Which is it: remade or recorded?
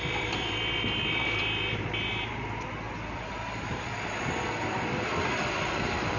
remade